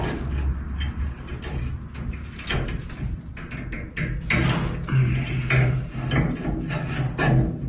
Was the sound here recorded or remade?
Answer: recorded